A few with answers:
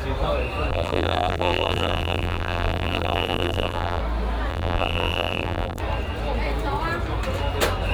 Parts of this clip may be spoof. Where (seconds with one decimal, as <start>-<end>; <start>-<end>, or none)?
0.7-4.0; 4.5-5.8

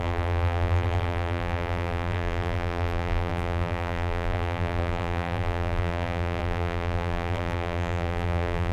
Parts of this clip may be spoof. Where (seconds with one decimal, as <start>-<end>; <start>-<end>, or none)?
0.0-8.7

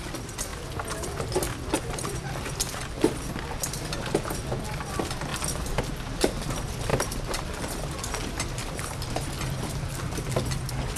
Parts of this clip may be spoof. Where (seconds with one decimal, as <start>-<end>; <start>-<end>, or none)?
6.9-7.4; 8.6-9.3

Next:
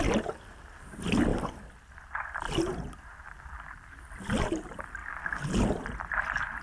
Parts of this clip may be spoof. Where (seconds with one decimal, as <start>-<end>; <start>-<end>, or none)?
none

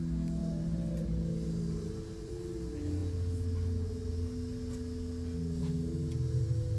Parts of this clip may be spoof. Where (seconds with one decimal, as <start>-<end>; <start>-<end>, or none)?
0.4-2.3

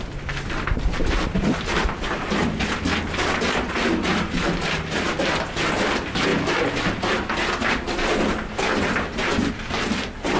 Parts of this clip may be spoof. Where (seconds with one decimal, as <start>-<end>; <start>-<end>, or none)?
none

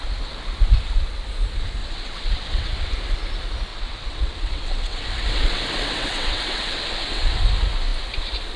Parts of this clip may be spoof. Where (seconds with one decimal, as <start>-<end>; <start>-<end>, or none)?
1.8-2.9; 3.7-7.4